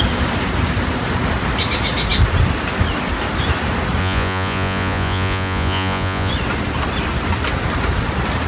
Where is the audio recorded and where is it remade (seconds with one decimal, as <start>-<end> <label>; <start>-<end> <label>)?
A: 0.0-4.0 recorded; 4.0-6.3 remade; 6.3-8.5 recorded